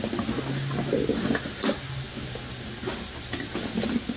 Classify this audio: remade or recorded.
recorded